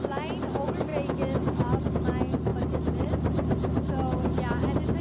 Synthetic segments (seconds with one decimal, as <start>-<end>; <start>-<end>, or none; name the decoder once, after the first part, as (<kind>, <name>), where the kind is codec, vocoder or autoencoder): none